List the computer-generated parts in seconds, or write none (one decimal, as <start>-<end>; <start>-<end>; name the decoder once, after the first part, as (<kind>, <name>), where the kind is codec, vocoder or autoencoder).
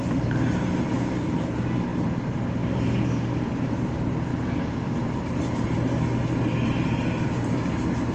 none